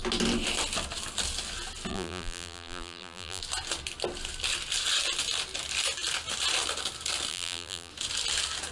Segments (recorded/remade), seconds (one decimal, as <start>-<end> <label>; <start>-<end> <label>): 0.0-1.9 recorded; 1.9-3.4 remade; 3.4-7.3 recorded; 7.3-7.9 remade; 7.9-8.7 recorded

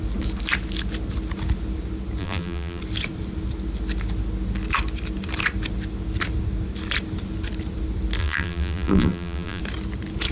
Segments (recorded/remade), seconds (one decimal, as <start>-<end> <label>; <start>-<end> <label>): 0.0-2.2 recorded; 2.2-2.8 remade; 2.8-8.2 recorded; 8.2-9.6 remade; 9.6-10.3 recorded